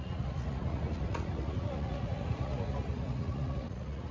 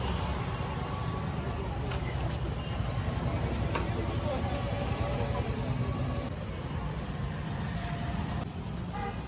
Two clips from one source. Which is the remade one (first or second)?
first